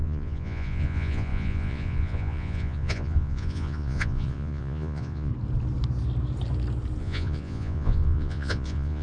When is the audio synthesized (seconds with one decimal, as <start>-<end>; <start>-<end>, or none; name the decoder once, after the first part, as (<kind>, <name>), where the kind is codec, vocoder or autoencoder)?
0.0-5.3 (vocoder, Vocos); 7.0-9.0